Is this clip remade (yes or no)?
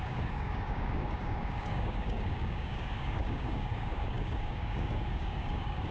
yes